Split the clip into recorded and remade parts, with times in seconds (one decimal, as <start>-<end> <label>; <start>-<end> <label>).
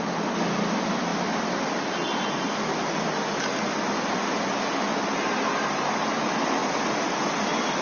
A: 0.0-7.8 recorded